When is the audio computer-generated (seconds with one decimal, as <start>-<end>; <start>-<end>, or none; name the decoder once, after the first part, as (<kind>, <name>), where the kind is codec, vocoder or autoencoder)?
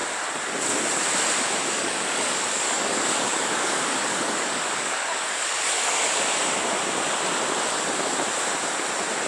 1.6-6.2 (codec, DAC)